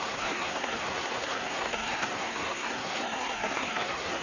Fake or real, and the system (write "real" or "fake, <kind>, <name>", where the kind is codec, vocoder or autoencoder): fake, codec, SNAC